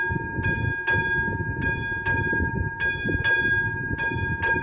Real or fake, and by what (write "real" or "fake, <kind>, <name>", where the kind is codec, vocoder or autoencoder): real